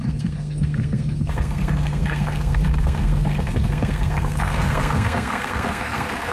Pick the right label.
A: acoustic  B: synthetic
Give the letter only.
B